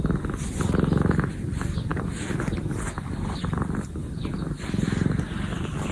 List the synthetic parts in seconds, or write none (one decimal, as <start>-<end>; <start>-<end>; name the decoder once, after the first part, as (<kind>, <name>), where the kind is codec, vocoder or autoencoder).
none